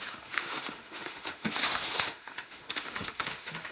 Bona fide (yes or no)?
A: no